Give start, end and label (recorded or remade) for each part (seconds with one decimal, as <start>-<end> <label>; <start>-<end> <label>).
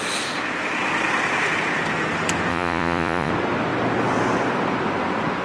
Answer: 0.0-2.5 recorded; 2.5-3.3 remade; 3.3-5.4 recorded